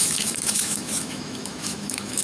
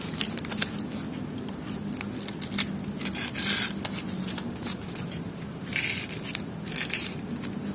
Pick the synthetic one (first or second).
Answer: first